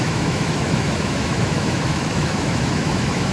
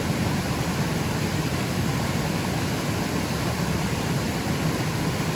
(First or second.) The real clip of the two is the second